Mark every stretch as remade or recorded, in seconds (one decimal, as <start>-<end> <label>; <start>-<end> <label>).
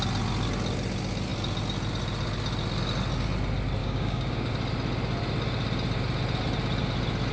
0.0-3.8 recorded; 3.8-4.5 remade; 4.5-7.3 recorded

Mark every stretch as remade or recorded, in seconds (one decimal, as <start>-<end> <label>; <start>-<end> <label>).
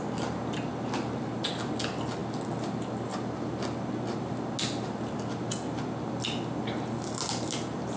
0.0-8.0 recorded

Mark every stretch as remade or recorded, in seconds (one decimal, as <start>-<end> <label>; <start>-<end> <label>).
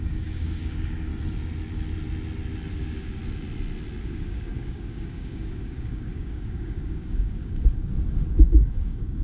0.0-1.1 remade; 1.1-2.7 recorded; 2.7-3.2 remade; 3.2-4.0 recorded; 4.0-7.9 remade; 7.9-8.4 recorded; 8.4-9.2 remade